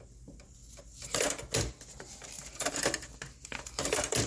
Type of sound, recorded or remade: recorded